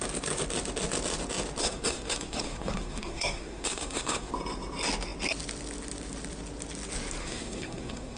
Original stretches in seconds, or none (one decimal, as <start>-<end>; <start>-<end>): 0.0-1.6; 4.3-7.2

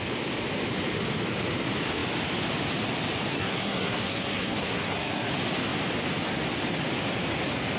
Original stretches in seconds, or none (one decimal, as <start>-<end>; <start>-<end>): 0.0-3.3; 5.3-7.8